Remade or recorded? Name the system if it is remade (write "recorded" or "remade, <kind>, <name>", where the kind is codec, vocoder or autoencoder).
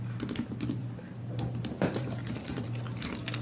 remade, vocoder, BigVGAN v2